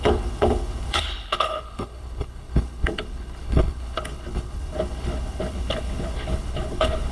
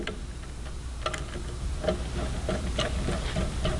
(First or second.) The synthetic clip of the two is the first